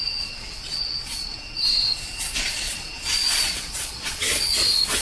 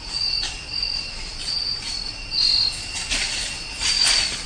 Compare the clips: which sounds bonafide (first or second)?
second